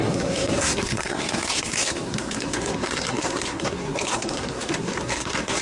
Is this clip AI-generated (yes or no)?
yes